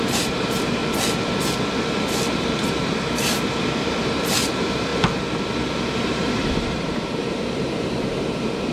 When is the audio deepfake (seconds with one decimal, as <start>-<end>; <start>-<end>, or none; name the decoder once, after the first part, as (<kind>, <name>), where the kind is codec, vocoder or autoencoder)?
0.0-0.8 (vocoder, BigVGAN v2); 2.4-4.9; 5.8-8.7